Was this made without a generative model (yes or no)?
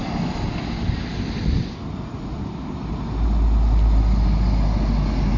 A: yes